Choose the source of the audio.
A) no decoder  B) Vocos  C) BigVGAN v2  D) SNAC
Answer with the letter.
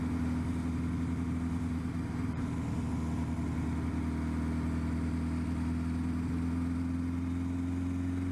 A